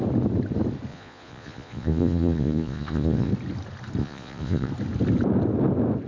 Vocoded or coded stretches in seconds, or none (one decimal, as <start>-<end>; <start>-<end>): 0.9-3.3; 4.0-4.7